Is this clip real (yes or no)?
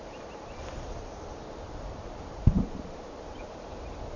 no